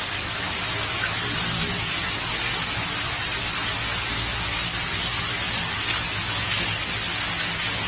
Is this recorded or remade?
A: recorded